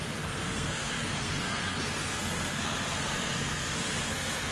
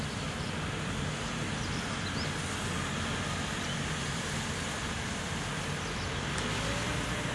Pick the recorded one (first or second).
second